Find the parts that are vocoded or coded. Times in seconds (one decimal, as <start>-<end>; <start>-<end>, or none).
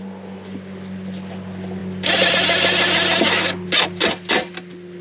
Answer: none